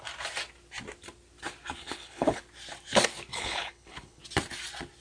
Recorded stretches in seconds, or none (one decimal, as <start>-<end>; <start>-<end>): 0.0-1.8; 2.4-3.3; 4.2-5.0